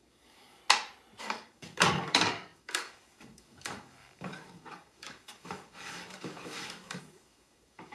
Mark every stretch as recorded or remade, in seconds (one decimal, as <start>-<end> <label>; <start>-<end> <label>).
0.0-0.6 remade; 0.6-1.2 recorded; 1.2-7.9 remade